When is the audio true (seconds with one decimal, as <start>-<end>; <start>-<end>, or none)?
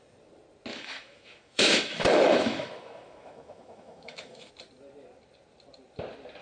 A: 0.0-0.7; 4.5-6.4